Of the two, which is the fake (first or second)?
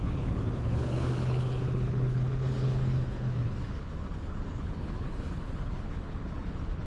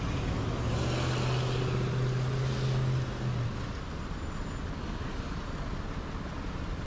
first